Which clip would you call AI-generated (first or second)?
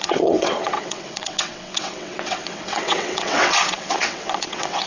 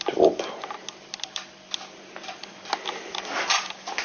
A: first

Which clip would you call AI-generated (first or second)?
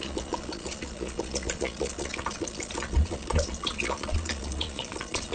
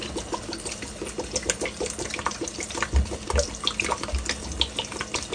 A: first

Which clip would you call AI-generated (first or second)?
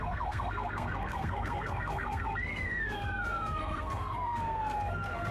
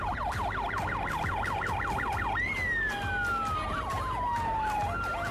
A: first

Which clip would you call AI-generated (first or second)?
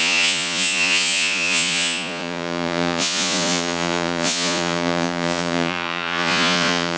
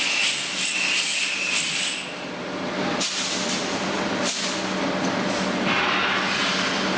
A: first